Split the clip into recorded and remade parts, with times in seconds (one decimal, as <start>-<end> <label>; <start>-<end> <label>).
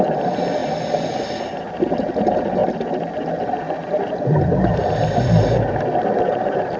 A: 0.0-6.8 recorded